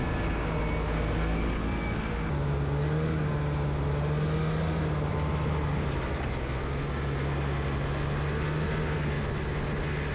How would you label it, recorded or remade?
recorded